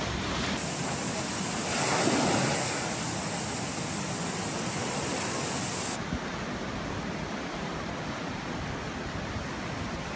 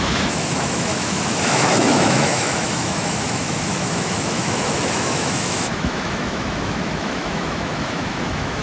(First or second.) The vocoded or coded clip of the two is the second